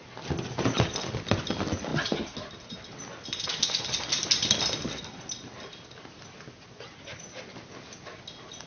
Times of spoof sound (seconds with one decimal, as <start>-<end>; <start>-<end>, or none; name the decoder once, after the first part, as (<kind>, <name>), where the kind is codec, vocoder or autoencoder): none